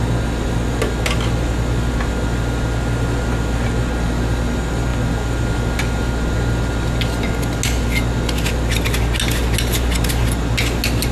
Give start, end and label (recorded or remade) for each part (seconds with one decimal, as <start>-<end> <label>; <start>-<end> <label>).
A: 0.0-11.1 recorded